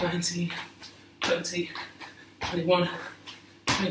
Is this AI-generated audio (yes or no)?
no